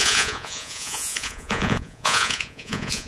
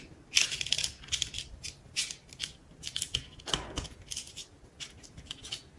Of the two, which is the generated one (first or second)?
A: first